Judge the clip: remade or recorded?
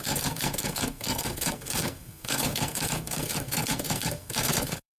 remade